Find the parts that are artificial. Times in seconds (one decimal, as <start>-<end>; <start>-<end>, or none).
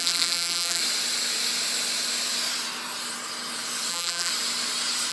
0.0-0.8; 3.9-4.3